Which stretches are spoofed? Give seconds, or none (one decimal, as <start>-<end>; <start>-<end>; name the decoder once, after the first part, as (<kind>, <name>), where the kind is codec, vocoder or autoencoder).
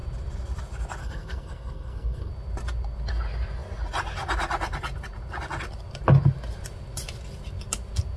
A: 1.0-2.3 (codec, SNAC)